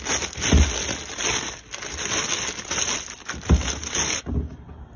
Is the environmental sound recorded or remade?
recorded